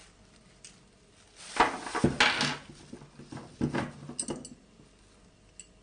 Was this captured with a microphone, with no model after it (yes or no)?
yes